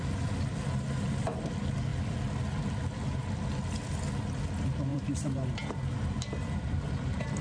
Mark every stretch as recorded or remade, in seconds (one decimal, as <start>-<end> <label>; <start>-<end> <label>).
0.0-4.9 recorded; 4.9-7.4 remade